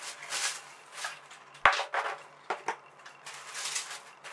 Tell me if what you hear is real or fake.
real